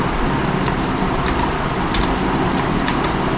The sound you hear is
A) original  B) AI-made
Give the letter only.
A